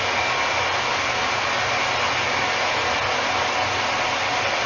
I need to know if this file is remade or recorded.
recorded